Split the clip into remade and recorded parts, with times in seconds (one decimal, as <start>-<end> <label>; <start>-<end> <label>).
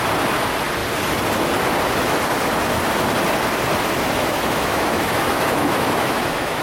0.0-4.2 recorded; 4.2-6.6 remade